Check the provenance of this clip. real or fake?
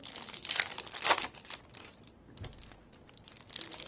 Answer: real